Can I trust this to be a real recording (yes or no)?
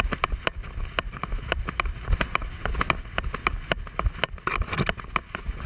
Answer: yes